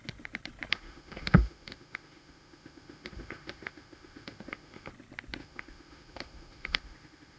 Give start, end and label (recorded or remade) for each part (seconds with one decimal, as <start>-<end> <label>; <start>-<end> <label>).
0.0-0.7 recorded; 0.7-4.9 remade; 4.9-5.4 recorded; 5.4-7.4 remade